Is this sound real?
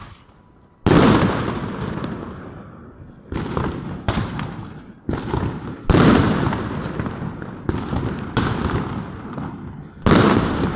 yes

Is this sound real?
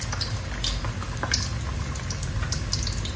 yes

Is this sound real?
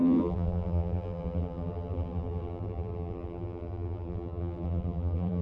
no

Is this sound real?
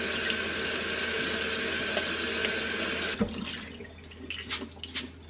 yes